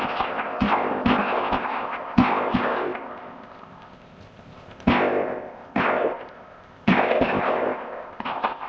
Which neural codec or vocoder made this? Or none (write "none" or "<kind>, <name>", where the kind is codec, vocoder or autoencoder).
codec, ZipCodec